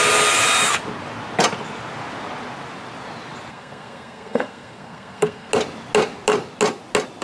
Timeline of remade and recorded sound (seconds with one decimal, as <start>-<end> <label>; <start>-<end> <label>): 0.0-3.5 recorded; 3.5-5.5 remade; 5.5-7.2 recorded